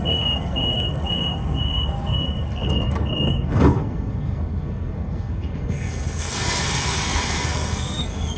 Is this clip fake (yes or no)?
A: yes